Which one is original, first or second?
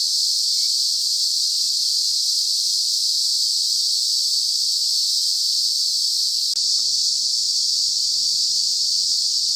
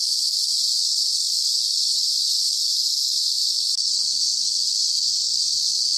first